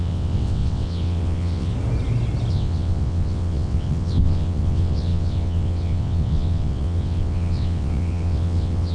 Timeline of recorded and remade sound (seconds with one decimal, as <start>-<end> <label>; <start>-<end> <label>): 0.0-1.7 remade; 1.7-2.5 recorded; 2.5-8.9 remade